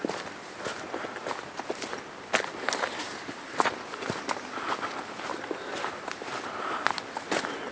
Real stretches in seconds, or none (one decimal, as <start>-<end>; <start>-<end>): 0.0-7.7